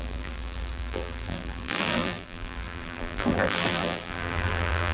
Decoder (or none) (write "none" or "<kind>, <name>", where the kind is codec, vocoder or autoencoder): vocoder, BigVGAN v2